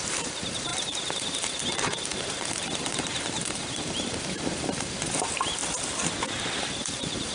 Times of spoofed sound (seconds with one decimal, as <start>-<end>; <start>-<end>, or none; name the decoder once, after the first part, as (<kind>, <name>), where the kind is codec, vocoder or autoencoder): 0.0-5.6 (vocoder, BigVGAN v2); 6.6-7.3